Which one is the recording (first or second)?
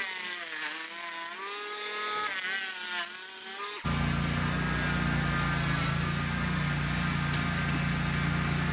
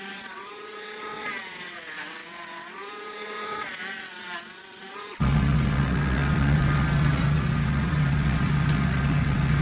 first